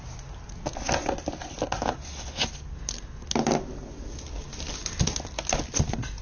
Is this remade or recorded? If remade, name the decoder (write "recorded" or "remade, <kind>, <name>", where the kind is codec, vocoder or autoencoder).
recorded